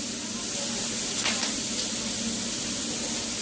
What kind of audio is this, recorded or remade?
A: recorded